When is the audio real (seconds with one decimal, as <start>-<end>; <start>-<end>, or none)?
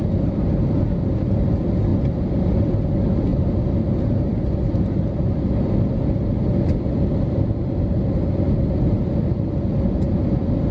0.0-10.7